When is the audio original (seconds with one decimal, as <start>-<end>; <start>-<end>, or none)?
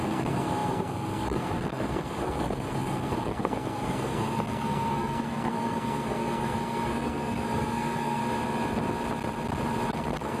8.2-9.9